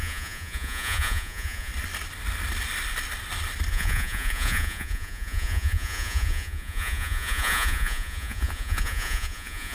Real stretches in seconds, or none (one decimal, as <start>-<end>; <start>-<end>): 1.7-3.7